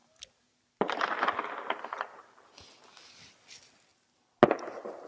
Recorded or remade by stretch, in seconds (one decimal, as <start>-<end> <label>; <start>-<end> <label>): 0.0-5.1 recorded